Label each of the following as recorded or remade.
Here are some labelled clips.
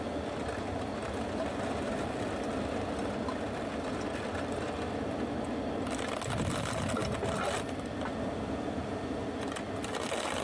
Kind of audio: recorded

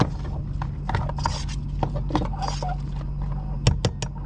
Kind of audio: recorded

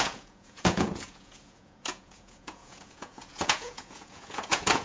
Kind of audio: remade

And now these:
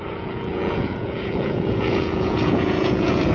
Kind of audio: remade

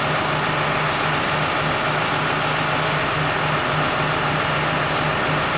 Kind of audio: recorded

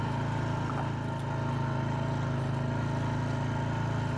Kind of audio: recorded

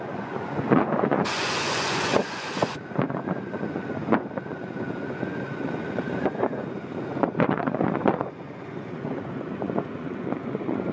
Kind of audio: remade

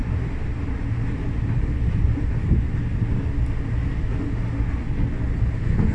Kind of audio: recorded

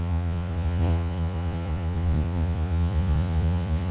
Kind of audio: remade